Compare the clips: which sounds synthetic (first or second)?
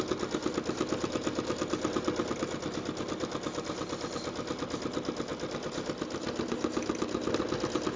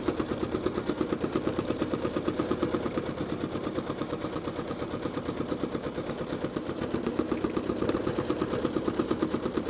second